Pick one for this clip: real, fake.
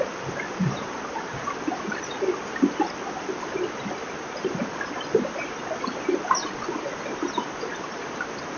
real